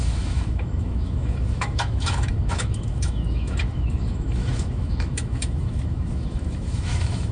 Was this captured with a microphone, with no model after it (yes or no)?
no